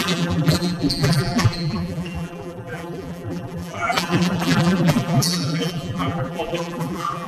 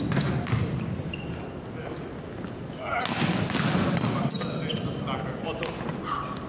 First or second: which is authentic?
second